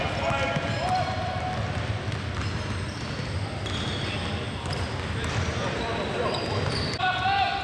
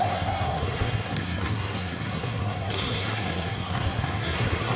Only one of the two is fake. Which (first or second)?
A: second